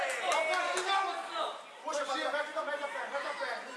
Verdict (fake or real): real